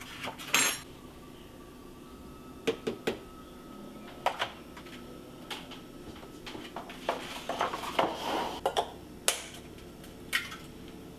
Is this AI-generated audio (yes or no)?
no